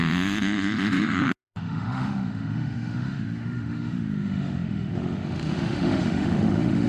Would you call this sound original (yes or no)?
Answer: no